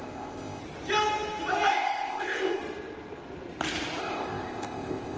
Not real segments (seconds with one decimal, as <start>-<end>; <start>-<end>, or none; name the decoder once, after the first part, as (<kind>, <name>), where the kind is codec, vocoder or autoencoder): 0.0-0.6 (codec, ZipCodec); 1.7-2.6; 4.0-5.2